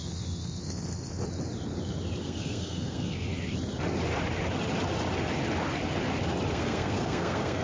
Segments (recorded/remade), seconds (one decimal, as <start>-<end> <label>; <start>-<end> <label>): 0.0-2.2 recorded; 2.2-3.3 remade; 3.3-6.5 recorded; 6.5-7.6 remade

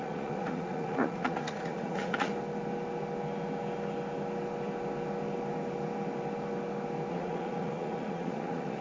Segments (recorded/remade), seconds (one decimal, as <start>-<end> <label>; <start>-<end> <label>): 0.0-2.3 remade; 2.3-7.1 recorded; 7.1-8.8 remade

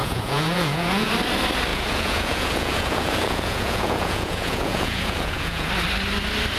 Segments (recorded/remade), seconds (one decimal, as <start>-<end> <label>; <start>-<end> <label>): 0.0-1.1 remade; 1.1-1.7 recorded; 1.7-5.7 remade; 5.7-6.6 recorded

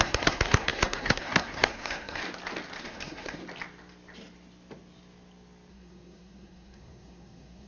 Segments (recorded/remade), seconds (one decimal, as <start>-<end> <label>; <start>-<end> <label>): 0.0-2.2 remade; 2.2-2.8 recorded; 2.8-3.4 remade; 3.4-5.7 recorded; 5.7-7.7 remade

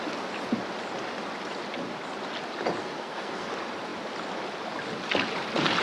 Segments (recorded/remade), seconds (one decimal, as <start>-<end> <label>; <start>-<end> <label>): 0.0-2.8 recorded; 2.8-3.5 remade; 3.5-5.8 recorded

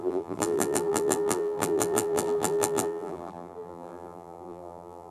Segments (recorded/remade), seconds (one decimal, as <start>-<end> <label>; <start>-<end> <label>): 0.0-5.1 remade

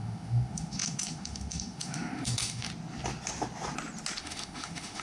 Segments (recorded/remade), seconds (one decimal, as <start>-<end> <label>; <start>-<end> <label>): 0.0-2.7 remade; 2.7-4.2 recorded; 4.2-5.0 remade

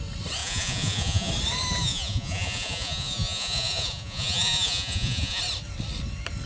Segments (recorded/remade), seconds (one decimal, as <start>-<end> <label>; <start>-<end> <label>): 0.0-0.4 recorded; 0.4-1.3 remade; 1.3-1.8 recorded; 1.8-5.4 remade; 5.4-6.5 recorded